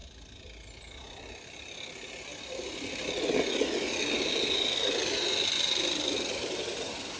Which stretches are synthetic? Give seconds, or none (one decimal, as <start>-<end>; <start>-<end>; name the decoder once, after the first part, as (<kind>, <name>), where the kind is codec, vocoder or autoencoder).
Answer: none